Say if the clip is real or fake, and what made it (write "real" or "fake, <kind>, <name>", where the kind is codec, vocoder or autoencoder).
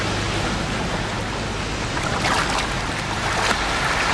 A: real